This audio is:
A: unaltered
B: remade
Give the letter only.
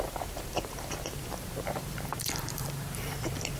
B